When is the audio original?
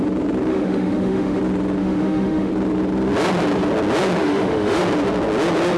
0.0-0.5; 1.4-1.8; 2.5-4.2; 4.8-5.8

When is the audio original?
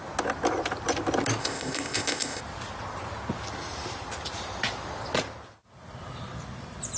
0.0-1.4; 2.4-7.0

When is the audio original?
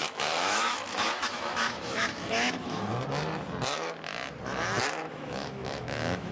2.9-5.1